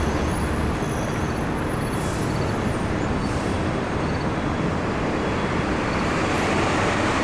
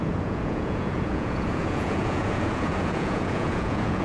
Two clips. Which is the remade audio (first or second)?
second